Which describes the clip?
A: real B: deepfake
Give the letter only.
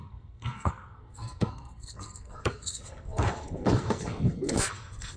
B